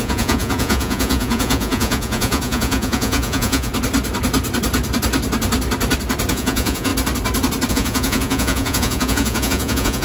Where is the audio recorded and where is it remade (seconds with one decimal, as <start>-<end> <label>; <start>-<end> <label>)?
0.0-3.7 remade; 3.7-6.3 recorded; 6.3-6.9 remade; 6.9-7.7 recorded; 7.7-10.0 remade